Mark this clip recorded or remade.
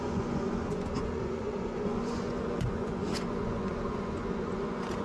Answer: remade